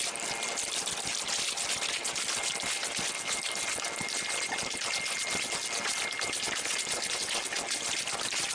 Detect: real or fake real